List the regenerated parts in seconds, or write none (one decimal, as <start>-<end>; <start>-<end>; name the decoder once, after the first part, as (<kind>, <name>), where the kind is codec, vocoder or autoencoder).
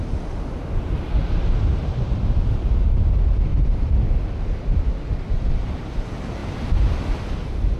none